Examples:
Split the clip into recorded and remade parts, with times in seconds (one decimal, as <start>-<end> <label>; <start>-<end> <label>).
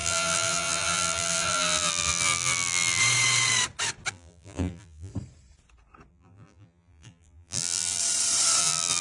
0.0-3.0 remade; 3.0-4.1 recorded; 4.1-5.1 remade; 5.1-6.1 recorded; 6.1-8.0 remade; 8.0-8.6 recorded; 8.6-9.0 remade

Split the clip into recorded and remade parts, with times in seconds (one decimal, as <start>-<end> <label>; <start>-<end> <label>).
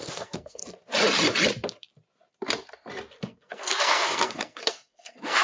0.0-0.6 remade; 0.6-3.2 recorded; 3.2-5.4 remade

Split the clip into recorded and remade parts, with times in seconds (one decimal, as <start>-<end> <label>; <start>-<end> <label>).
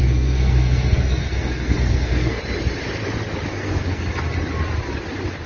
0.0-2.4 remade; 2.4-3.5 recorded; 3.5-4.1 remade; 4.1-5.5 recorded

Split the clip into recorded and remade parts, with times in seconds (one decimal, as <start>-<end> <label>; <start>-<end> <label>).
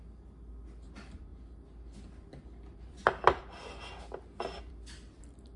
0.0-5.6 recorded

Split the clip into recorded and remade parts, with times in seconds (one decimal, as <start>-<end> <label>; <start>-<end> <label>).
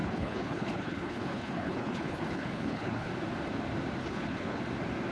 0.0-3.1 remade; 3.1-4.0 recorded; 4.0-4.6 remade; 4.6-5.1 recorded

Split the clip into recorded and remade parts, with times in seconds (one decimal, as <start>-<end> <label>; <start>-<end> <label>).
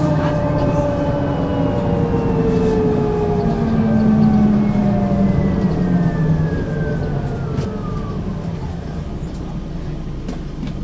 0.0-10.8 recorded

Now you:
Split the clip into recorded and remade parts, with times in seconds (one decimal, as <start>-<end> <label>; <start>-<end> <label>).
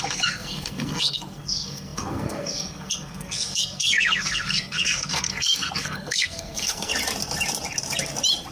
0.0-6.9 remade; 6.9-8.5 recorded